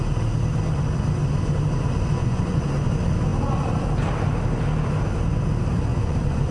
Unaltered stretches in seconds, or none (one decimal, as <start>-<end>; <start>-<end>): 0.0-2.2; 2.9-5.9